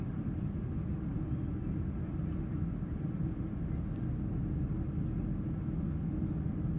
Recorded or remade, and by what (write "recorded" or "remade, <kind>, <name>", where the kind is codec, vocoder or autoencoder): recorded